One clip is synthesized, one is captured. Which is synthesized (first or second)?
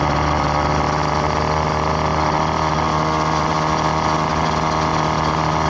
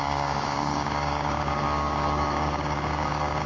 second